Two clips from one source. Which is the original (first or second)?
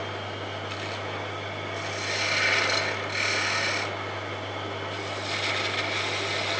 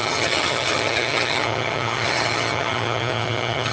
first